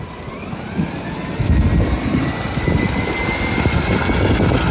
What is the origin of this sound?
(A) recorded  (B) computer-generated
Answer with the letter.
A